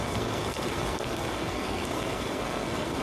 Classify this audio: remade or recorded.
remade